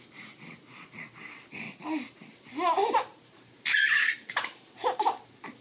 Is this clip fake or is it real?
real